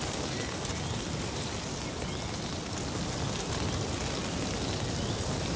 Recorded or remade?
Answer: recorded